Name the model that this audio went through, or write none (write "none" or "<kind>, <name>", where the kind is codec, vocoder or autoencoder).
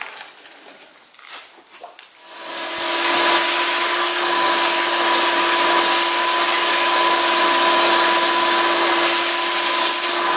none